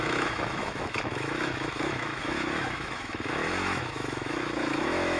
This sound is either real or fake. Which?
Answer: fake